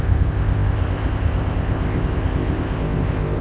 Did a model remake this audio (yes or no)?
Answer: yes